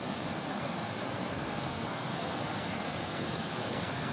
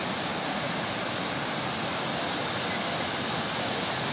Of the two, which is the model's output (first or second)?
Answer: first